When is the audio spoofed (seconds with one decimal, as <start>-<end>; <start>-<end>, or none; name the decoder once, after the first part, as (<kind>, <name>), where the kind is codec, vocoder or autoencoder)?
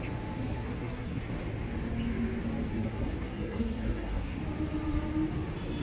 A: 0.5-1.3 (codec, SNAC); 2.7-4.4